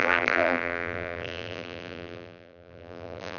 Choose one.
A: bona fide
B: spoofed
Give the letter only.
B